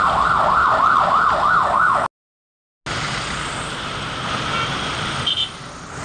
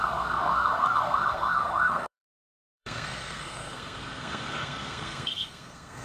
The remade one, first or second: second